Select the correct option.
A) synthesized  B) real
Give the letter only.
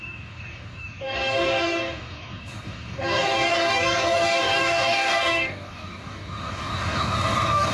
A